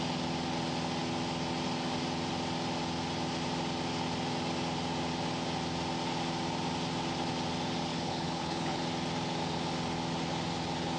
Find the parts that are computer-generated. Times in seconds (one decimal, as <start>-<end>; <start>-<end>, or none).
7.9-8.8